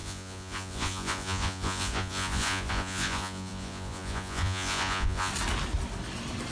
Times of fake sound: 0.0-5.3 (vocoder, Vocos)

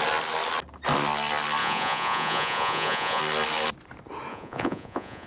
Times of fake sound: 1.6-3.2 (vocoder, Vocos); 4.3-5.3

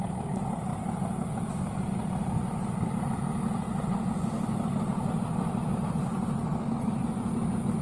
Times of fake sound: none

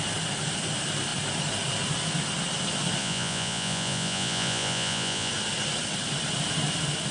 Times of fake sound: 3.0-5.3 (vocoder, Vocos)

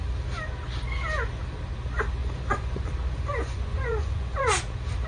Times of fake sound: 2.2-2.8 (vocoder, Vocos); 3.4-4.4

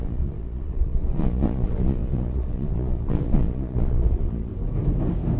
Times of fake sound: 0.0-4.5 (vocoder, Vocos)

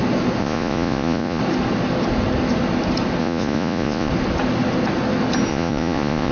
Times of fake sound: 0.4-1.4 (vocoder, Vocos); 3.2-4.1; 5.5-6.3